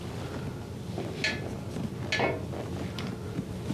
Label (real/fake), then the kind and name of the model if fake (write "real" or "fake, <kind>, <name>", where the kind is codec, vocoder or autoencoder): real